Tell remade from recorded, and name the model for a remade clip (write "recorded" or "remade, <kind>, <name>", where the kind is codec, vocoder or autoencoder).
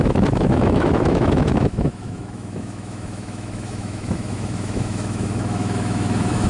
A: remade, autoencoder, DAC-VAE